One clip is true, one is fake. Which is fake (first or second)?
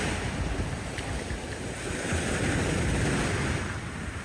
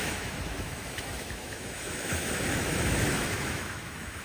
second